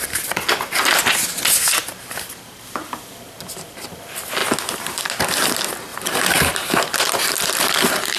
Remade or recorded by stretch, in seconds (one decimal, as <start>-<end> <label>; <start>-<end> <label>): 0.0-1.8 recorded; 1.8-2.6 remade; 2.6-5.9 recorded; 5.9-8.2 remade